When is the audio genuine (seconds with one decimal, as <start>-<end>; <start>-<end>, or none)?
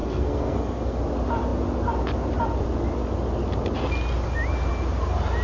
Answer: 1.0-5.4